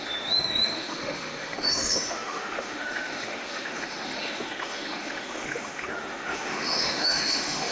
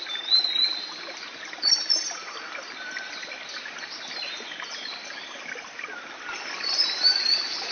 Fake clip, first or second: first